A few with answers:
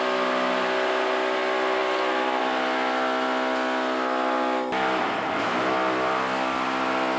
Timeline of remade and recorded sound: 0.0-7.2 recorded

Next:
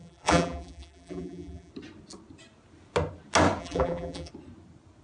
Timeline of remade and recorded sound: 0.0-1.7 remade; 1.7-3.6 recorded; 3.6-4.3 remade; 4.3-5.0 recorded

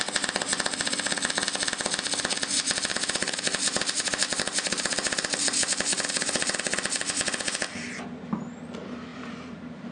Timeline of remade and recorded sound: 0.0-2.9 recorded; 2.9-7.1 remade; 7.1-9.1 recorded; 9.1-9.9 remade

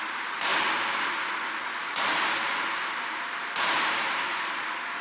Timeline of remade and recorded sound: 0.0-0.5 remade; 0.5-1.9 recorded; 1.9-5.0 remade

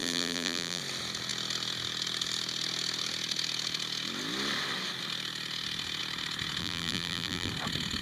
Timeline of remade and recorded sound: 0.0-0.8 remade; 0.8-6.6 recorded; 6.6-7.5 remade; 7.5-8.0 recorded